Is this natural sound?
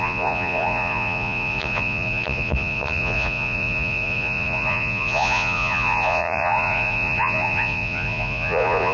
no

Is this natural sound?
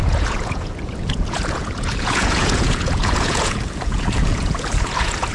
no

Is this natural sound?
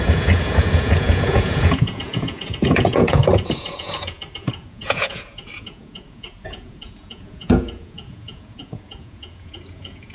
no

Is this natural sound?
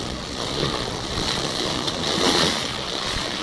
no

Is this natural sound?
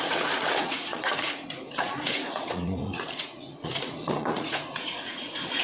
no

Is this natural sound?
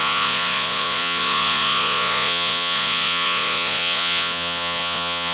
no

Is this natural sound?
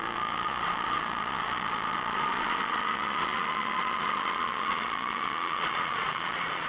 no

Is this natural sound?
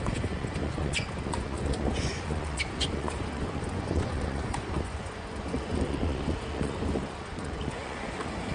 no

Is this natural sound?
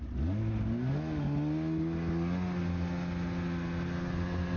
yes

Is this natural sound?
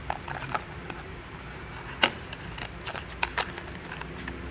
yes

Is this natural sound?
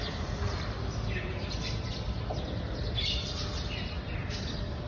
yes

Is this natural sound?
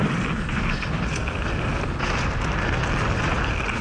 yes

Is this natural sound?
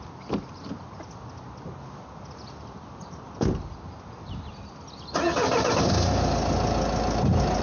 yes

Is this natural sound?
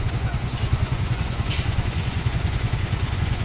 no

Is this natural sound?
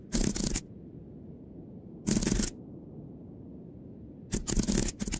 yes